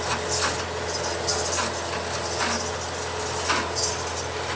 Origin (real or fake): real